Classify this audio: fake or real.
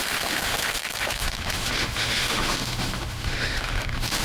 fake